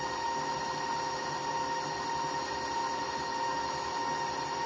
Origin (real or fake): real